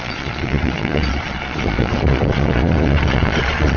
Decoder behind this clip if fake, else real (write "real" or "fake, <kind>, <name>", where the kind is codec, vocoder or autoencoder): fake, vocoder, Vocos